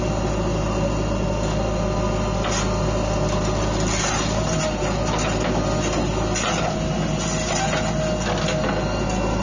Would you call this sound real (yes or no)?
yes